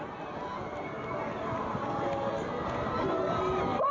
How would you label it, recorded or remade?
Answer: recorded